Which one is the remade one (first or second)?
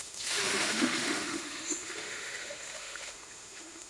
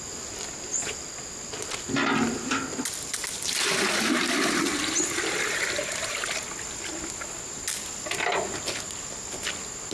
first